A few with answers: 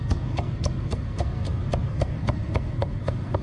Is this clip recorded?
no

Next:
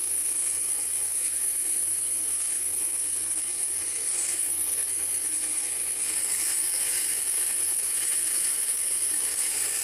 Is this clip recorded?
no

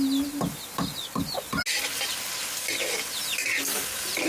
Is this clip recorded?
yes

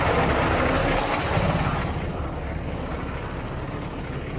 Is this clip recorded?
yes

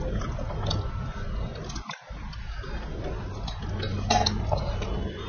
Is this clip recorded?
yes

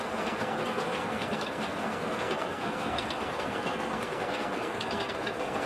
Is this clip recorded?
no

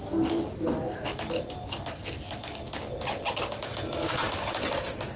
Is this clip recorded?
yes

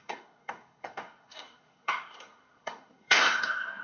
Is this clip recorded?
no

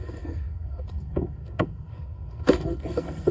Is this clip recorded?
no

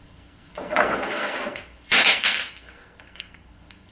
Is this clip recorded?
no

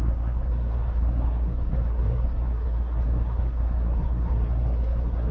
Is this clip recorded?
no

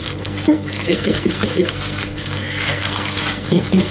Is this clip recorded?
no